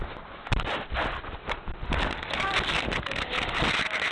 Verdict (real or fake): real